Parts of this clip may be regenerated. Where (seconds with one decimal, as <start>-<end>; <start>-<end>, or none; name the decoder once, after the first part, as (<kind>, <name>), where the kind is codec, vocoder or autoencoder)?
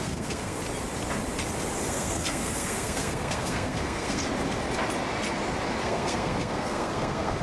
0.0-0.6 (codec, SNAC); 1.8-4.2; 5.8-7.4